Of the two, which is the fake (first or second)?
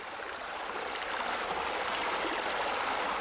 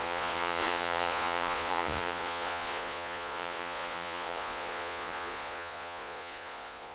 second